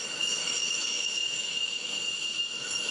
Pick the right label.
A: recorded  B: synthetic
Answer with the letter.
B